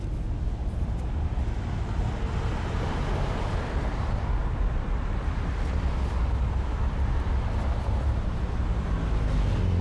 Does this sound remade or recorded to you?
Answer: recorded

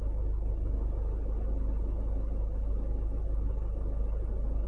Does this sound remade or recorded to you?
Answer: recorded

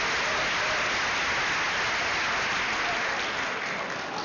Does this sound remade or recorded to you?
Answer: recorded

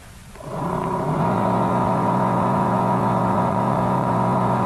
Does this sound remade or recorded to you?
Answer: remade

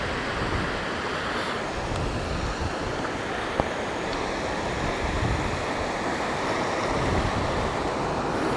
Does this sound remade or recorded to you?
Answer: recorded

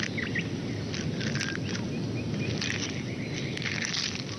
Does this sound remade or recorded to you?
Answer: recorded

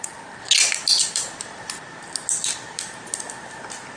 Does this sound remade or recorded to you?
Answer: recorded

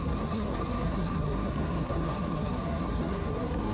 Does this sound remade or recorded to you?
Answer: remade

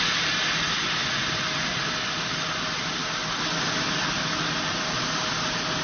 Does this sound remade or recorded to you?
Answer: recorded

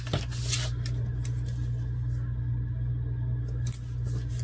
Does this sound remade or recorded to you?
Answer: recorded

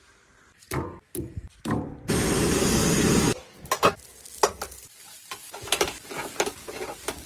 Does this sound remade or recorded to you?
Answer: recorded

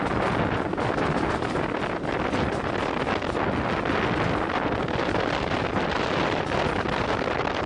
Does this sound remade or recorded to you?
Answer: recorded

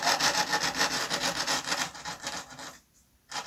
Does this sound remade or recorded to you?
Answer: recorded